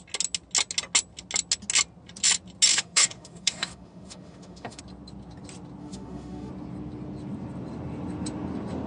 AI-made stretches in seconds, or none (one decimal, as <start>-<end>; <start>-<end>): 2.7-4.8; 5.8-6.5